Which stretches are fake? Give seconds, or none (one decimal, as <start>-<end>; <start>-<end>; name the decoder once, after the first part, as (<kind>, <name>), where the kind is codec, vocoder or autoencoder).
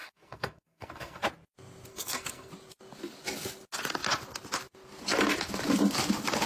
0.0-1.2 (codec, SNAC); 1.9-2.5